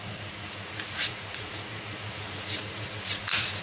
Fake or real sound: fake